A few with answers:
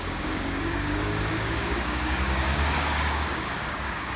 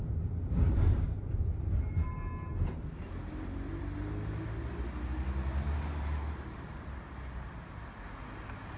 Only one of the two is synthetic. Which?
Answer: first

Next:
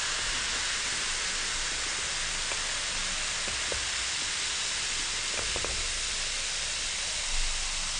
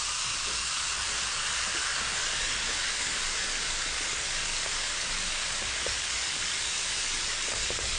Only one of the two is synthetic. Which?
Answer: second